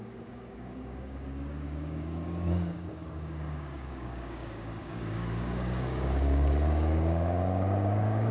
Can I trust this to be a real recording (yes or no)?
no